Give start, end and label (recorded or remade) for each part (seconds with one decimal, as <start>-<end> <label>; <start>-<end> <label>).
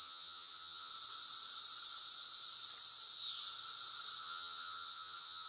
0.0-0.9 remade; 0.9-4.2 recorded; 4.2-5.5 remade